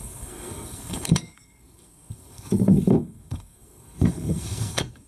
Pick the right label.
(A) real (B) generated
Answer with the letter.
B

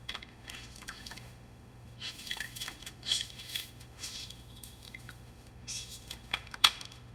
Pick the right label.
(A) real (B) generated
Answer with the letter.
B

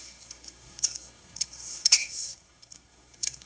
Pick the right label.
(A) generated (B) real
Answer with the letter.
A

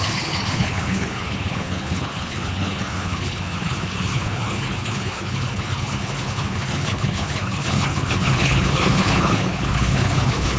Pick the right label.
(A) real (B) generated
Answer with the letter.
B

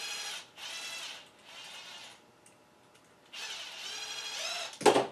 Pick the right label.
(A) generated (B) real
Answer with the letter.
B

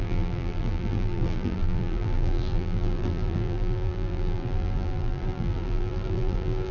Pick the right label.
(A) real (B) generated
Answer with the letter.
B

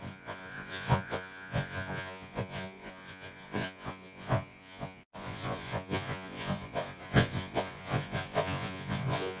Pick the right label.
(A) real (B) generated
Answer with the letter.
B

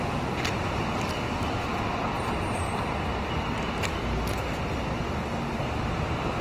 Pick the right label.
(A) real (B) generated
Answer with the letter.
A